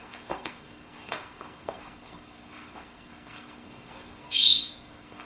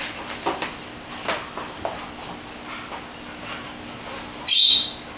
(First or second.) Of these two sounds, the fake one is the first